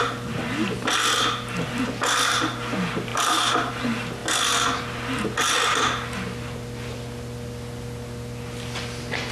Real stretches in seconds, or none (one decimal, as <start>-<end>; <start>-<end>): 0.0-3.1; 3.7-9.3